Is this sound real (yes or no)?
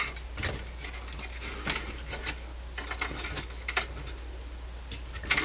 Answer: yes